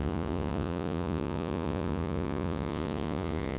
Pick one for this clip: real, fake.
fake